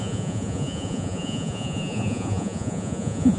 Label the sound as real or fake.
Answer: fake